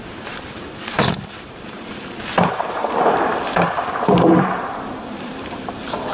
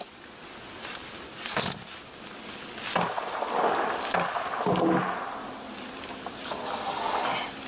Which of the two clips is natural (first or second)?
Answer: second